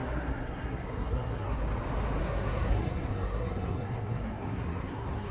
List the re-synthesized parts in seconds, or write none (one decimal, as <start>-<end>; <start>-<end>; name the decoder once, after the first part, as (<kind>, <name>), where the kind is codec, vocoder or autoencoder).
0.0-1.6 (codec, SNAC); 2.2-5.3

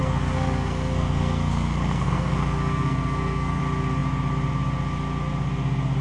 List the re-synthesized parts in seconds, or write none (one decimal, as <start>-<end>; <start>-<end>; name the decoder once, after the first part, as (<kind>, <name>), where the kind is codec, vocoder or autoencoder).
0.0-3.6 (codec, SNAC)

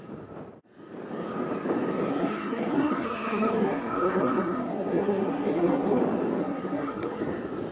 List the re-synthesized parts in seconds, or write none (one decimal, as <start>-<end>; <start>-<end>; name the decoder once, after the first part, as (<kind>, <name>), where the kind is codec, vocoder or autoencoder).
2.1-6.0 (codec, SNAC); 6.4-7.2

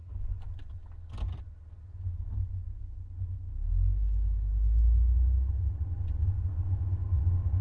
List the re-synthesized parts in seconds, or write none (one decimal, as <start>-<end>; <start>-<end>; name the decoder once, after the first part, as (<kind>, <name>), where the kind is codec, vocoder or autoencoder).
6.2-6.9 (codec, SNAC)

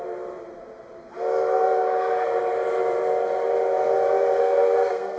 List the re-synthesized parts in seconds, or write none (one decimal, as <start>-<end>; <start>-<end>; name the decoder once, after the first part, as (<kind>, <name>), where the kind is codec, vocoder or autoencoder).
1.6-2.4 (codec, SNAC); 4.4-5.2

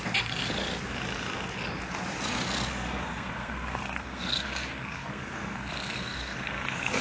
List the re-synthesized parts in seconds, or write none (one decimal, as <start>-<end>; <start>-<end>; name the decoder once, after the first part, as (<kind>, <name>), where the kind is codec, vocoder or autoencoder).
2.7-7.0 (codec, SNAC)